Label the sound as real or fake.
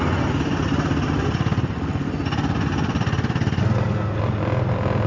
real